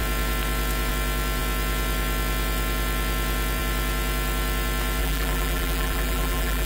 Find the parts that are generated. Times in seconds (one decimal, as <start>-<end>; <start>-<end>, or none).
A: 5.0-6.7